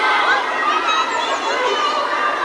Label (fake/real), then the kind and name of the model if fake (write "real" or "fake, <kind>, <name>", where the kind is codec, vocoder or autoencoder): real